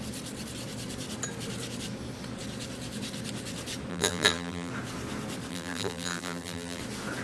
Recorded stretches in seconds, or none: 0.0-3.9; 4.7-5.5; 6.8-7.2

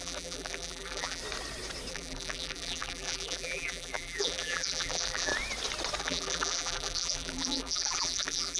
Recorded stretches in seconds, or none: 1.2-1.9; 5.3-6.0

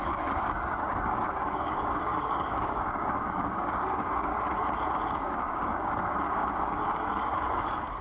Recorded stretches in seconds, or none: 4.3-5.1

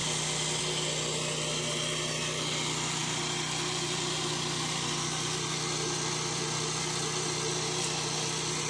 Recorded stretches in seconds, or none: 0.0-8.7

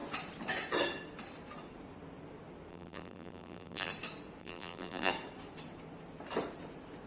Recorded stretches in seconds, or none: 0.0-2.7; 3.9-4.4; 5.1-7.1